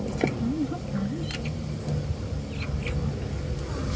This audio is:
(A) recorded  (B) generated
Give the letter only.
A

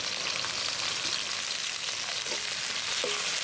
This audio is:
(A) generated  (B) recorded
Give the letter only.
B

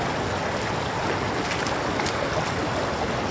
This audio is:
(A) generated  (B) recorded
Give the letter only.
B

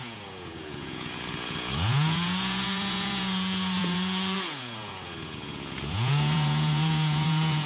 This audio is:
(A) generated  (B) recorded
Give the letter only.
A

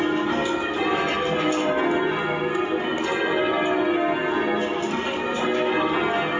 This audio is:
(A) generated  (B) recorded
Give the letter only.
B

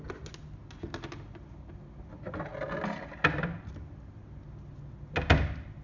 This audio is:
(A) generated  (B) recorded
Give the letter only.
B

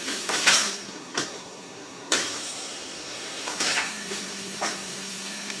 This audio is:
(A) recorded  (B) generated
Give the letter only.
B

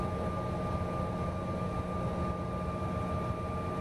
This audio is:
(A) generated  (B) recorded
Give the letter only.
B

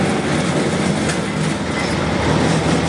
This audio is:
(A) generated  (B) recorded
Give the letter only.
B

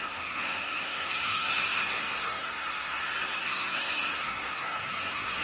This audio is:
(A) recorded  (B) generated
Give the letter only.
B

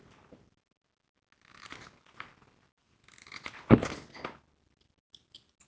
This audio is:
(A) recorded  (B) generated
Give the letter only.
A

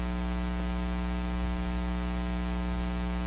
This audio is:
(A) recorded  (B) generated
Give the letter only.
A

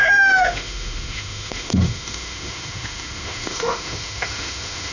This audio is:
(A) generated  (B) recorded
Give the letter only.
A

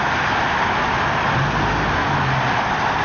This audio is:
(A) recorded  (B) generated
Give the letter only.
A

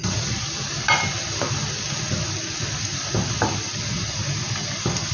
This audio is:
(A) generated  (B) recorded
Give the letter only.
B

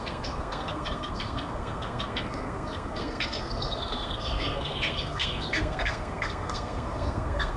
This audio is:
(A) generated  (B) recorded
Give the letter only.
A